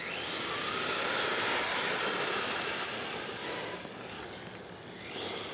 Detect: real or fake real